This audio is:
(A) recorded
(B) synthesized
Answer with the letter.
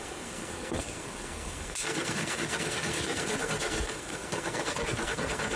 B